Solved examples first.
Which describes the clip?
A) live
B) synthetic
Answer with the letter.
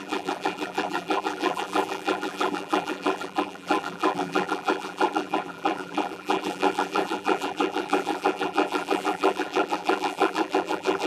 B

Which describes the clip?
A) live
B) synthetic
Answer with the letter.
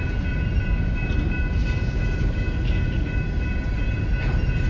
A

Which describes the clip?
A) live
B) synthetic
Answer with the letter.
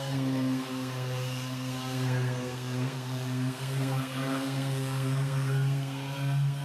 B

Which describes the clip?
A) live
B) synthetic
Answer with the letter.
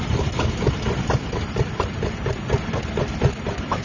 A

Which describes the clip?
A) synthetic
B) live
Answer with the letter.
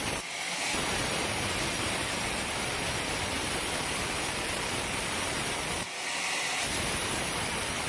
B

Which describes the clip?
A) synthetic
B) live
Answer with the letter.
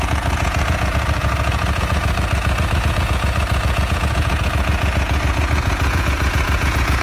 A